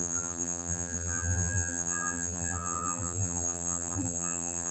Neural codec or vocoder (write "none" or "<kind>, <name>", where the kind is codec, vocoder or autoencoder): vocoder, BigVGAN v2